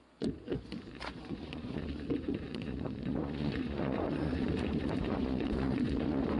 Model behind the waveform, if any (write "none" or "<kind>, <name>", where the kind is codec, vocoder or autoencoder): vocoder, Vocos